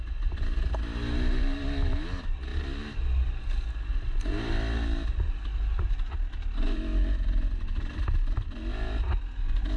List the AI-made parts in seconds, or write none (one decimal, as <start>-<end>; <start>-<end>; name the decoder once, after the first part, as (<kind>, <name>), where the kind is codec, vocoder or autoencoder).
none